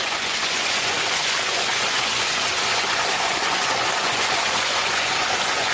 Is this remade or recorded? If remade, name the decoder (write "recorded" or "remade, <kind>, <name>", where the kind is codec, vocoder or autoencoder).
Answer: remade, vocoder, Vocos